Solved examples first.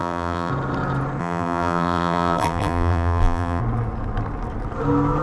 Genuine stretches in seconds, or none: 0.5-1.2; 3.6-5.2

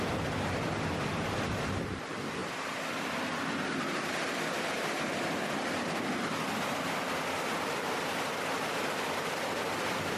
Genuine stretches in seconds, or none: 0.0-10.2

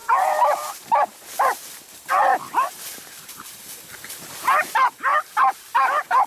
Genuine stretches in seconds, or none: 1.8-2.3; 2.8-6.3

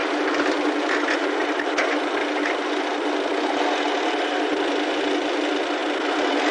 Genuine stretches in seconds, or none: 0.0-6.5

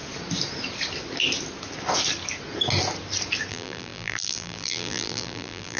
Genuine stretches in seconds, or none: 0.0-3.5

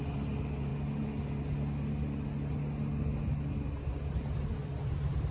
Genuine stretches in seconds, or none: 0.0-5.3

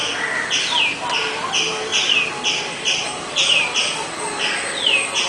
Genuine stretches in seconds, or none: 1.9-5.3

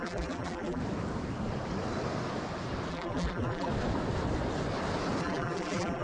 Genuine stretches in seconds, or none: 0.8-2.9; 3.7-5.2